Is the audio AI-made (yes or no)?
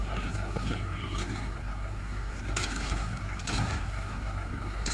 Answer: yes